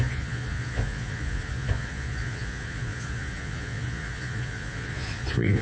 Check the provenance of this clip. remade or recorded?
remade